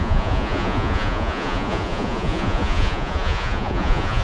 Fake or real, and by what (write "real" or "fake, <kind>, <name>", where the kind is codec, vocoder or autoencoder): fake, vocoder, Vocos